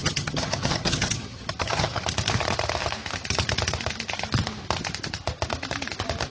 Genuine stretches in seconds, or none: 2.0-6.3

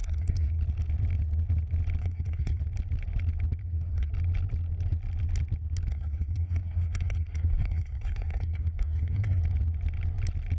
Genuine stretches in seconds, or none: 0.6-2.0; 2.6-3.6; 4.1-5.9; 9.4-10.6

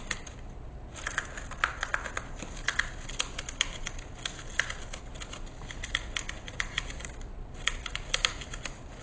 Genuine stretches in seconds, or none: 0.0-9.0

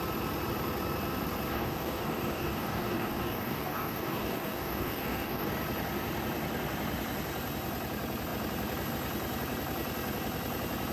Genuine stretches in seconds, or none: 0.0-1.5; 5.5-10.9